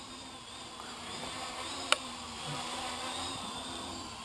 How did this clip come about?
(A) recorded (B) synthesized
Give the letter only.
B